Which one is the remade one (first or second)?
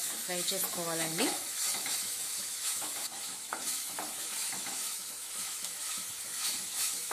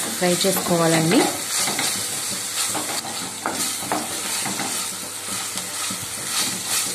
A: first